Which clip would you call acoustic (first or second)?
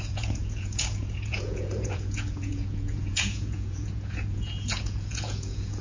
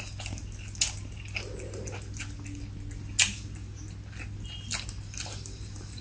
second